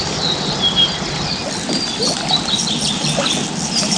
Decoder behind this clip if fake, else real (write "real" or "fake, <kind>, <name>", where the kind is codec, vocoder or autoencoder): fake, vocoder, BigVGAN v2